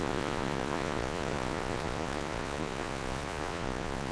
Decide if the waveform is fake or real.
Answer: fake